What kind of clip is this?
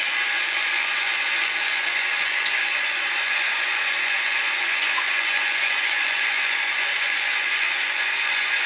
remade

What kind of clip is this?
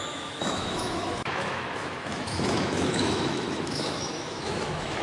remade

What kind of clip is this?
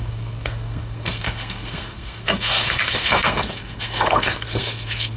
remade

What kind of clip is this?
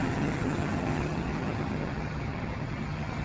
remade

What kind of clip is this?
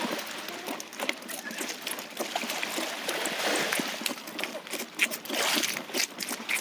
recorded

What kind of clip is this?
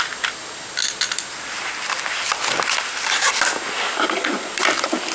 recorded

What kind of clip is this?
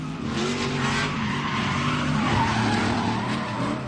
remade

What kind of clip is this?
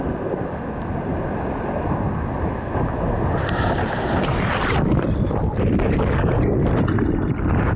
recorded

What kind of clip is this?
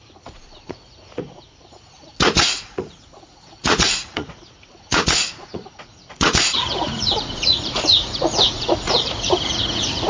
remade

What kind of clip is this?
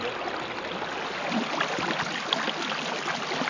recorded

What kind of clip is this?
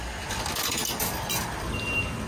recorded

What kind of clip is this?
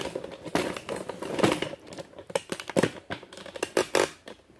recorded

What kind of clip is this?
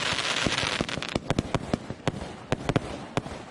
recorded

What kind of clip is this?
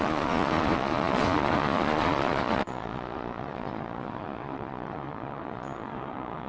remade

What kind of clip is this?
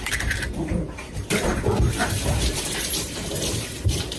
remade